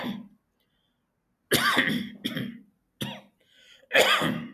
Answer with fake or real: real